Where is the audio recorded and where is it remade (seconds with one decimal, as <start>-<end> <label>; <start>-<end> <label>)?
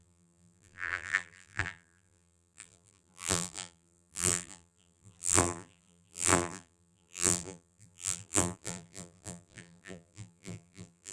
0.0-11.1 remade